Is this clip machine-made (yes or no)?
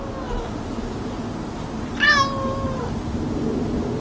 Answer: no